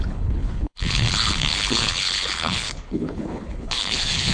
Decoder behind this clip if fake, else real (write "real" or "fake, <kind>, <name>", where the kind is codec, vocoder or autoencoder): fake, codec, HILCodec